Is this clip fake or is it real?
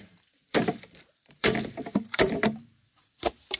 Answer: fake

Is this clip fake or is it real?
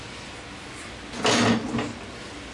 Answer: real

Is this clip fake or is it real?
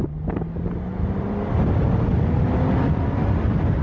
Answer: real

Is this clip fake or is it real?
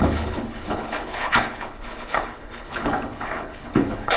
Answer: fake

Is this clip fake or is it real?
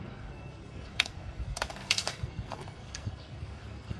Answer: fake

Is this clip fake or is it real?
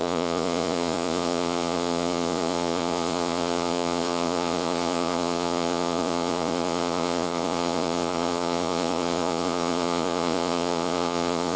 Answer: fake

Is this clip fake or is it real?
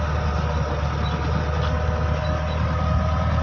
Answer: fake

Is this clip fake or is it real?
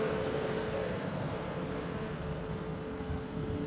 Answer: fake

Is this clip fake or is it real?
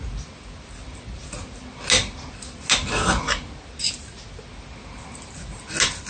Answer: real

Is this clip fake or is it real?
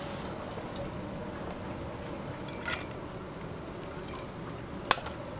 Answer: real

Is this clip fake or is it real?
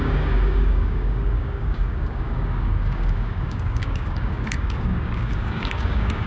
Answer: fake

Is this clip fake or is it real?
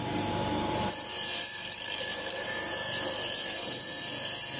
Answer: fake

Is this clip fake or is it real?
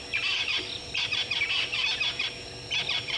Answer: fake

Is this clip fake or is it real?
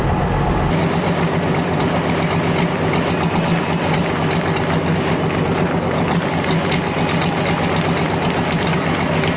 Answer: real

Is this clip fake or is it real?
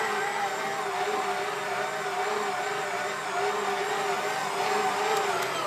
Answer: fake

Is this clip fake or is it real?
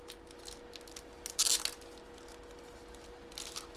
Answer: real